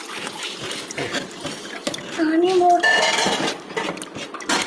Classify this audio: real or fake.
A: real